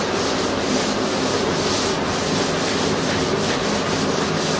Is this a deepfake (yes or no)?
no